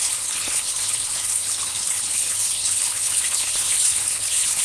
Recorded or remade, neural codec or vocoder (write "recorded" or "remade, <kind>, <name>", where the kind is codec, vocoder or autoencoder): remade, codec, HILCodec